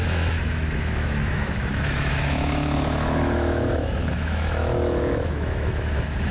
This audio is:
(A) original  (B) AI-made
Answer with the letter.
B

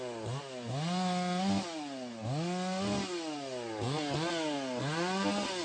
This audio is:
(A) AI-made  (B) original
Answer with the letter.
B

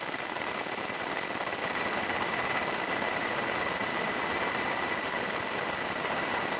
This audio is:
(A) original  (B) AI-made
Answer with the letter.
A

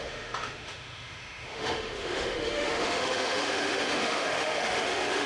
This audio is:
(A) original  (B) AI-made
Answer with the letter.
B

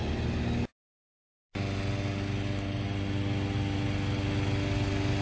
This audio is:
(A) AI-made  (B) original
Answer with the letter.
B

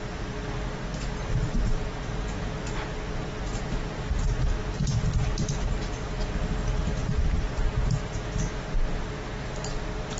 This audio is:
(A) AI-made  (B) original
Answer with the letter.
B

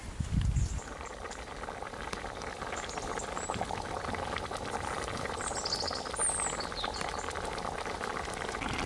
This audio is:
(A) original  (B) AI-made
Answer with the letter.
A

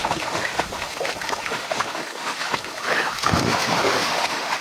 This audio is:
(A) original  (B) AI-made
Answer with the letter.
B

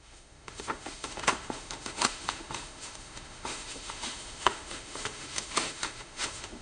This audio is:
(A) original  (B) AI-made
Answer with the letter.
B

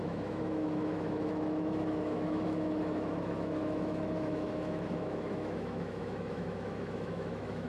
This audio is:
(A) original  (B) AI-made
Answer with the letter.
B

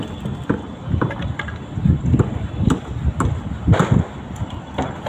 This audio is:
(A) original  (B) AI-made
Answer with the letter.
A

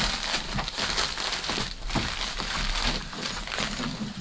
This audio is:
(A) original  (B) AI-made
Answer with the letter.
A